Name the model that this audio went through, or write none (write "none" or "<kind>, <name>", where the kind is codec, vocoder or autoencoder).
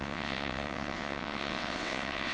vocoder, WaveNeXt